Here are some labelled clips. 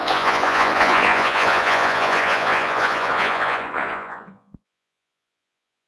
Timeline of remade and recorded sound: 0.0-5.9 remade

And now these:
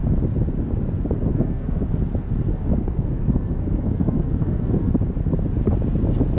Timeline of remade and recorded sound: 0.0-1.3 recorded; 1.3-2.0 remade; 2.0-2.5 recorded; 2.5-4.9 remade; 4.9-6.4 recorded